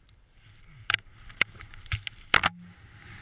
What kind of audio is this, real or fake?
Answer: real